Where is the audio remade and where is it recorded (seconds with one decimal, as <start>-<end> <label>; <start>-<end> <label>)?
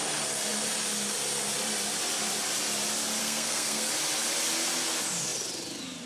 0.0-3.2 recorded; 3.2-3.9 remade; 3.9-6.1 recorded